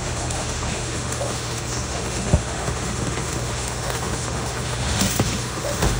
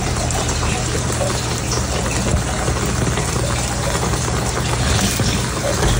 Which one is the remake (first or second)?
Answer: first